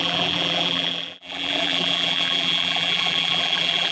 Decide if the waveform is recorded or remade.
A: remade